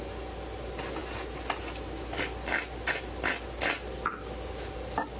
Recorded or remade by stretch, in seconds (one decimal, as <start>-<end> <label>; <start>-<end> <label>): 0.0-5.2 recorded